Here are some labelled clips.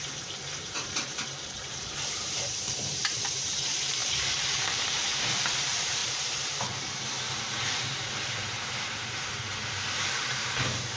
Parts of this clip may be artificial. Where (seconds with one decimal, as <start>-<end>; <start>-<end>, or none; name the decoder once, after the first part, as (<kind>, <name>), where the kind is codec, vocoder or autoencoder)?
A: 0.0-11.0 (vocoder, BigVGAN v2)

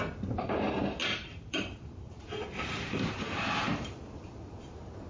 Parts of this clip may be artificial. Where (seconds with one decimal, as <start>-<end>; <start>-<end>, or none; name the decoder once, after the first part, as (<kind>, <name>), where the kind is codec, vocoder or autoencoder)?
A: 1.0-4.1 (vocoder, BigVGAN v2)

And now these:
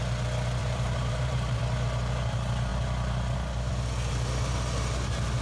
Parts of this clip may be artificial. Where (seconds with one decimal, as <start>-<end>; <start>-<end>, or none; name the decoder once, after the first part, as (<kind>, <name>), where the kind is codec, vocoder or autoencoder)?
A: 0.6-1.6 (vocoder, BigVGAN v2)

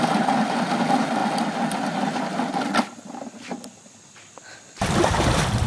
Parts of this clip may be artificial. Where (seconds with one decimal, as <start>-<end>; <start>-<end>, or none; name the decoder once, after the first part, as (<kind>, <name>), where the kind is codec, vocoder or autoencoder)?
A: 0.0-1.2 (vocoder, BigVGAN v2); 4.2-5.7

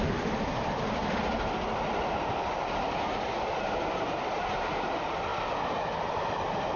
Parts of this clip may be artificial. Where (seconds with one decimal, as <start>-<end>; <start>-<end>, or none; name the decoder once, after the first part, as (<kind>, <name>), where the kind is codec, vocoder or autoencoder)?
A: 0.0-1.0 (vocoder, BigVGAN v2); 4.7-5.3; 6.0-6.8